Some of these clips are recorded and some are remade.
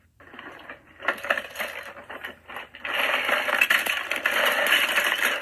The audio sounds recorded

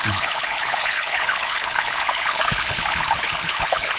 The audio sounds remade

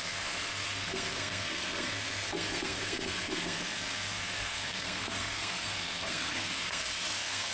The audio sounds remade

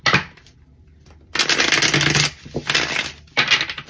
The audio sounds recorded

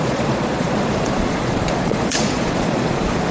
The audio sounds remade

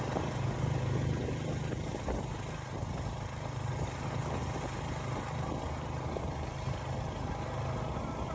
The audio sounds recorded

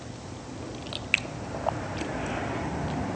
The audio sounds recorded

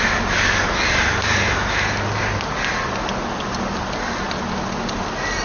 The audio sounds recorded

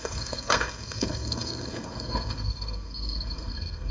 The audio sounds remade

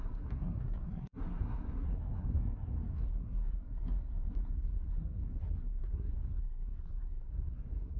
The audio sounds remade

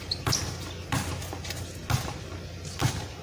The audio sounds recorded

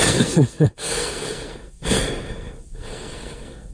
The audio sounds remade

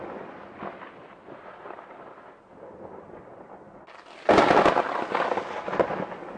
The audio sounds recorded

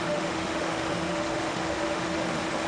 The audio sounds remade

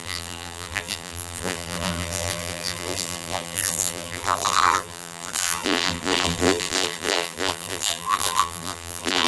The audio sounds remade